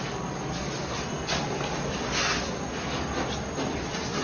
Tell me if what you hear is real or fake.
real